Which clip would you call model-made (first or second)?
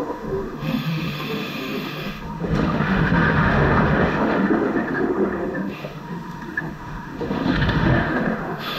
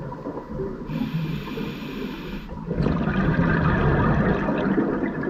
first